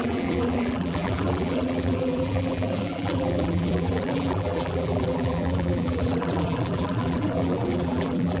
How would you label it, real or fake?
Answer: fake